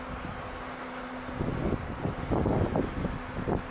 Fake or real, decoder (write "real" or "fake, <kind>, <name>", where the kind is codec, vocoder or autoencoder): real